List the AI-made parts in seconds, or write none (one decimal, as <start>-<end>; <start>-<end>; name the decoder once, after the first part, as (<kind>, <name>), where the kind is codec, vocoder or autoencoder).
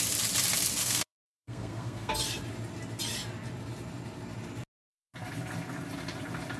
0.8-2.1 (codec, SNAC)